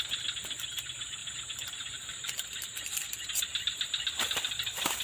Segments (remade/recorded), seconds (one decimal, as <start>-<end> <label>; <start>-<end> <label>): 0.0-5.0 recorded